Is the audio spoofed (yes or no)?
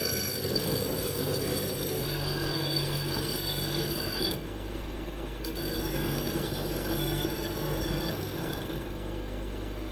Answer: yes